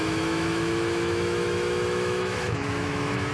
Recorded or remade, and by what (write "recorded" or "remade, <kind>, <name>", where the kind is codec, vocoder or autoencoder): remade, autoencoder, DAC-VAE